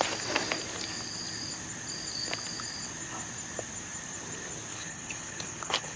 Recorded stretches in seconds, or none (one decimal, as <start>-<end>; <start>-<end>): 0.0-4.7